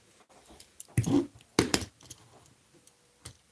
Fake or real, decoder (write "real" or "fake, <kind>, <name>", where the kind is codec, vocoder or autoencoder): real